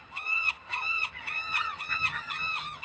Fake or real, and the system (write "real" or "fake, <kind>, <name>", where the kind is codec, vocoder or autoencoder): fake, vocoder, HiFi-GAN